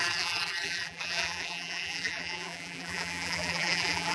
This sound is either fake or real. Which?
fake